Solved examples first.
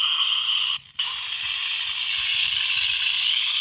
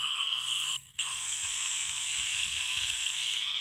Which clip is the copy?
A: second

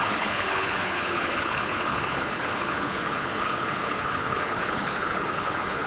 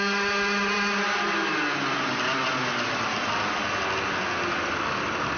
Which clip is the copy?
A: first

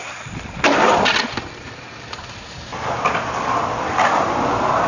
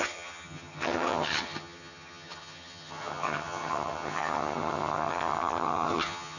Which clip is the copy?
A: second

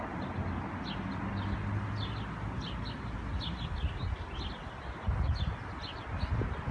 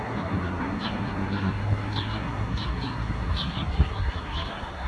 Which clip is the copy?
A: second